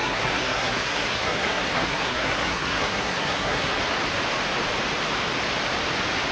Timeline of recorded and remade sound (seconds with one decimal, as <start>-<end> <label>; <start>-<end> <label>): 0.0-3.8 remade; 3.8-6.3 recorded